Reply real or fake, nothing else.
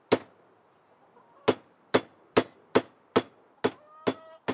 real